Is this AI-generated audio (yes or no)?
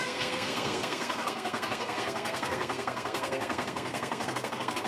yes